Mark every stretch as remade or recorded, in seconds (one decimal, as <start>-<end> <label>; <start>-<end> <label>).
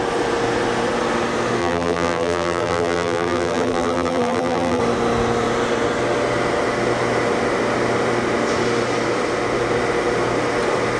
0.0-1.6 recorded; 1.6-4.8 remade; 4.8-11.0 recorded